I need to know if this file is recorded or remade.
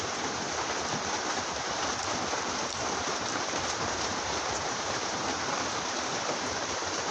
remade